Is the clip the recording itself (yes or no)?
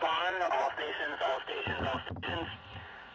no